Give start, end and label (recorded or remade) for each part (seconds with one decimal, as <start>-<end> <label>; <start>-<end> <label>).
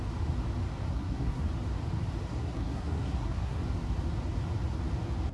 0.0-0.9 recorded; 0.9-1.5 remade; 1.5-2.3 recorded; 2.3-3.6 remade; 3.6-5.3 recorded